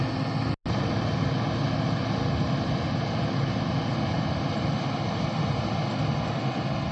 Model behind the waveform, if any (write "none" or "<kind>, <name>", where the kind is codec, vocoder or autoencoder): none